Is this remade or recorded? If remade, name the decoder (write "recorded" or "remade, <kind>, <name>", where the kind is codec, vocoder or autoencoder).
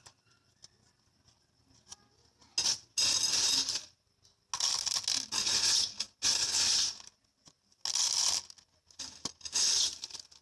recorded